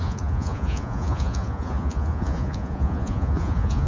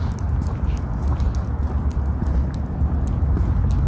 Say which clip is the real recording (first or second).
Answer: second